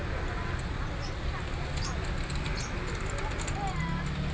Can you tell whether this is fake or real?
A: real